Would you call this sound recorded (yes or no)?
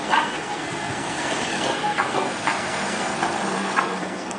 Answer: no